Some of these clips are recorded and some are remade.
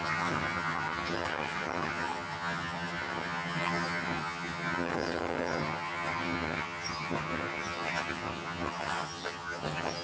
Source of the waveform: remade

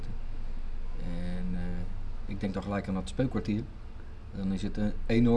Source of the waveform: recorded